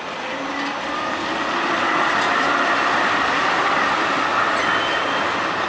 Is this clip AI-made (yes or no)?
no